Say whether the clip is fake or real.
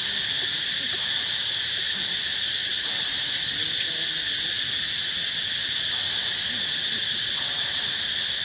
real